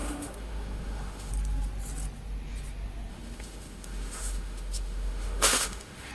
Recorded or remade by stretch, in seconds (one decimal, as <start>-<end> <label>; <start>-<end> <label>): 0.0-1.3 remade; 1.3-3.1 recorded; 3.1-6.1 remade